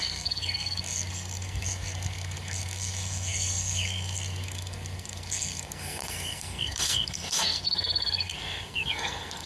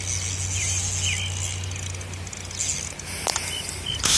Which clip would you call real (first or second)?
second